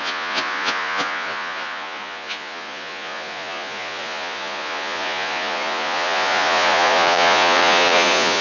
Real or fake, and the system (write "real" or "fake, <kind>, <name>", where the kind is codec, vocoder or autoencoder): fake, vocoder, Vocos